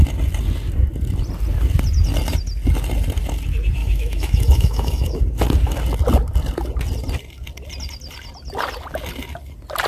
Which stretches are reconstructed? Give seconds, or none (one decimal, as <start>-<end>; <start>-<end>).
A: 3.8-5.2